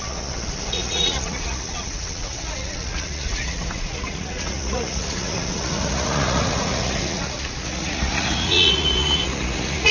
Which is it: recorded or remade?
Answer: remade